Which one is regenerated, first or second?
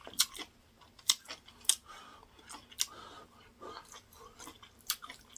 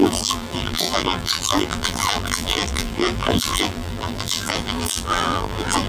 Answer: second